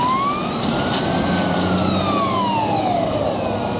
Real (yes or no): yes